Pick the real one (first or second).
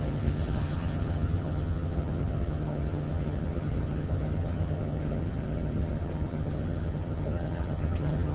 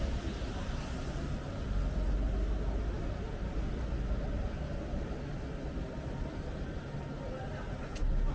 second